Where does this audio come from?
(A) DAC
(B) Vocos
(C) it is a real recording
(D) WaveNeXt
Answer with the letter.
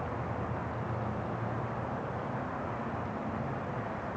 C